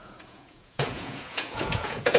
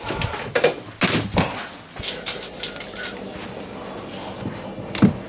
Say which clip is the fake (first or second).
first